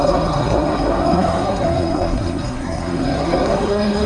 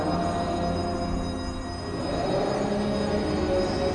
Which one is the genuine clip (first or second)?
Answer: second